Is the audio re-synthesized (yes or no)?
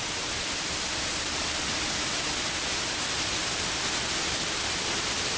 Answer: yes